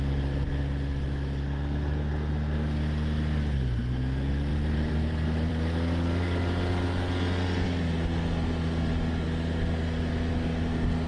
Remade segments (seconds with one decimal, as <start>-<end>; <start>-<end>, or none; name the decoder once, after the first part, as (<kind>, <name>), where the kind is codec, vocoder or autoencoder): 4.5-5.5 (vocoder, BigVGAN v2)